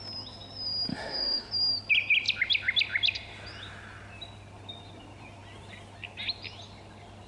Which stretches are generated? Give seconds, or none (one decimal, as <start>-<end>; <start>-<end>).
0.9-1.5